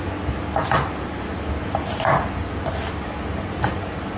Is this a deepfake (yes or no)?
no